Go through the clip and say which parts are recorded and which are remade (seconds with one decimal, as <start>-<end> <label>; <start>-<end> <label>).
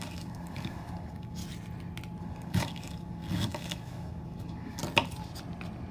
0.0-1.4 remade; 1.4-2.2 recorded; 2.2-4.8 remade; 4.8-5.9 recorded